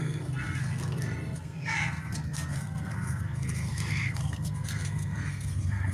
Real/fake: fake